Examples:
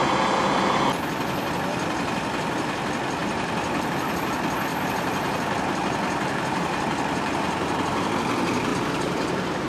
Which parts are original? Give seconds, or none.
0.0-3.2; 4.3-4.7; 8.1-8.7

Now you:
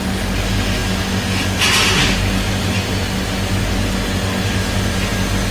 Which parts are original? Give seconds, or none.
0.0-5.5

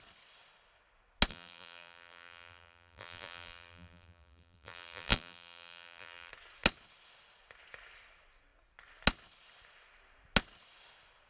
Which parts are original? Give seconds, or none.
0.0-1.3; 6.3-11.3